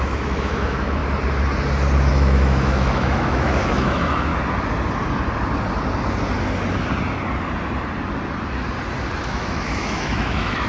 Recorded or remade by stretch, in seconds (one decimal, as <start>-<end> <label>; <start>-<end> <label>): 0.0-1.0 remade; 1.0-2.1 recorded; 2.1-4.3 remade; 4.3-9.2 recorded; 9.2-10.7 remade